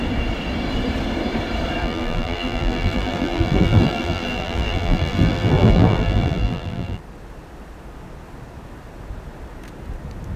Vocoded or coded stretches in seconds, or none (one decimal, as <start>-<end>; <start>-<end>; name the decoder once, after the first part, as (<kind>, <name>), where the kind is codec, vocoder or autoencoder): 1.8-7.0 (vocoder, BigVGAN v2)